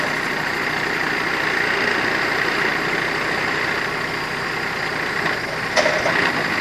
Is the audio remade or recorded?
recorded